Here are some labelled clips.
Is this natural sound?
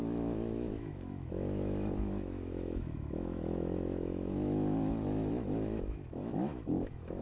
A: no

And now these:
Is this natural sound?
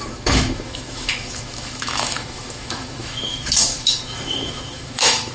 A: no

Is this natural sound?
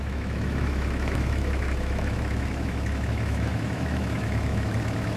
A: no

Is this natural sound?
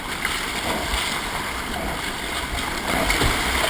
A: yes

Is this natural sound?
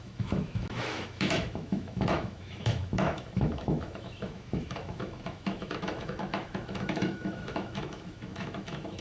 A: no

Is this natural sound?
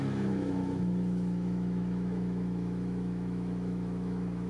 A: no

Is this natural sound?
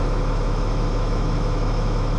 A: no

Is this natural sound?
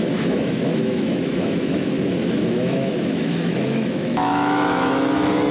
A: no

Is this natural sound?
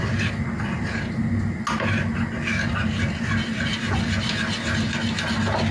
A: yes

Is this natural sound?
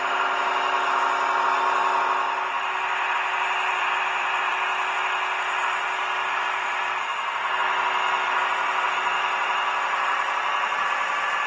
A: yes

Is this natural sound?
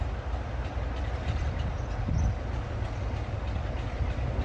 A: yes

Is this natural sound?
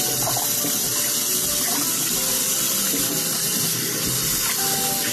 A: yes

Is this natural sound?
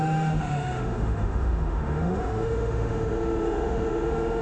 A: no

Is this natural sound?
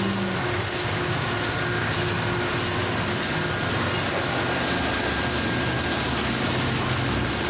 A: yes